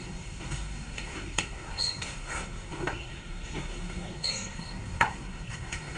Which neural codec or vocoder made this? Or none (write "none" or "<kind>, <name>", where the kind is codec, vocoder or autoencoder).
codec, SNAC